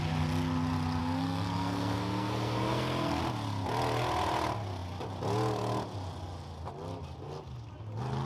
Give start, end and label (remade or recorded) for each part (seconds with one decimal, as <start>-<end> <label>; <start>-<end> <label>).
0.0-1.0 recorded; 1.0-3.2 remade; 3.2-8.3 recorded